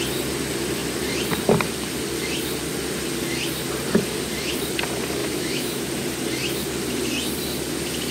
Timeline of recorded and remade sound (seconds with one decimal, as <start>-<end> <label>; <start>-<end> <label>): 0.0-5.2 recorded; 5.2-5.9 remade; 5.9-8.1 recorded